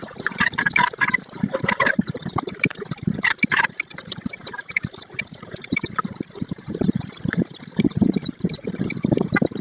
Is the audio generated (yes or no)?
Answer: yes